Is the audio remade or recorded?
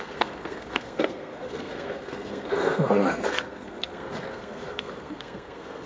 remade